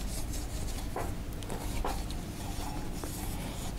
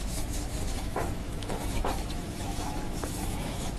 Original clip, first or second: first